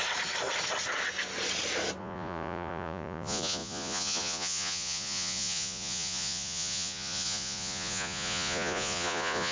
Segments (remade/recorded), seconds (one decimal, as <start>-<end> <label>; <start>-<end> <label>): 0.0-2.0 recorded; 2.0-9.5 remade